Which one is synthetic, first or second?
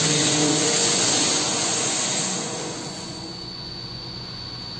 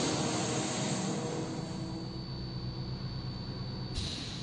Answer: first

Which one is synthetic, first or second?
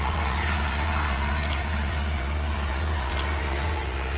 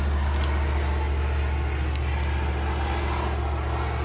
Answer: first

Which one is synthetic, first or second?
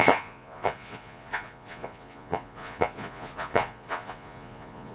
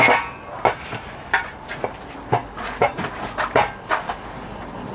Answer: first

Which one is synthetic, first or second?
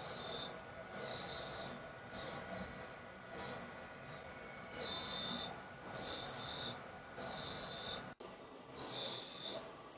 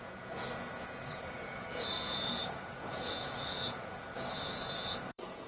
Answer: second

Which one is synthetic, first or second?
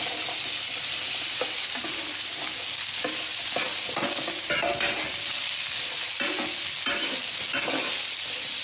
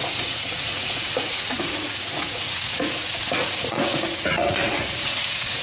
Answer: second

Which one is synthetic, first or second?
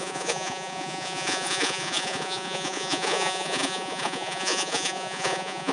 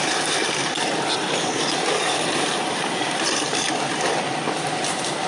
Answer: first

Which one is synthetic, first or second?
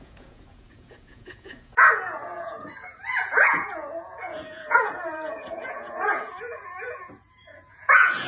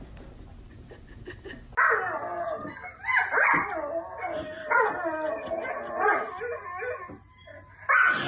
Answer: first